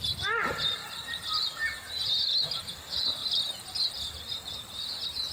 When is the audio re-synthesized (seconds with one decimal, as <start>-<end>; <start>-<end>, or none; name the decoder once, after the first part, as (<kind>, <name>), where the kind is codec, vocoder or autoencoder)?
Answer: 0.8-2.6 (vocoder, BigVGAN v2)